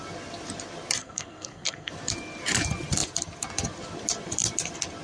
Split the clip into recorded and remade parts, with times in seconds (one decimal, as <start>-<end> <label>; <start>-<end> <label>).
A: 0.0-1.0 recorded; 1.0-1.9 remade; 1.9-5.0 recorded